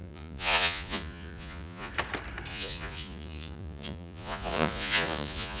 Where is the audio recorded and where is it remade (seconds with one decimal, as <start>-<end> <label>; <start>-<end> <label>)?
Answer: 0.0-1.9 remade; 1.9-2.5 recorded; 2.5-5.6 remade